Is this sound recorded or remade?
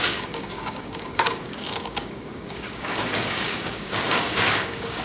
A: remade